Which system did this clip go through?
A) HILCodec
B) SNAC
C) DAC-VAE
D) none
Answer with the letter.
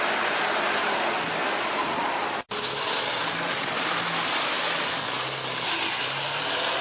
D